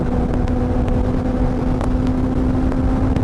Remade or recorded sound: recorded